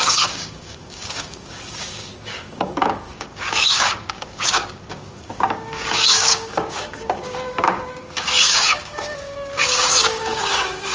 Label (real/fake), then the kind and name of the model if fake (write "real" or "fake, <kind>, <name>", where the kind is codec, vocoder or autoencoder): fake, codec, DAC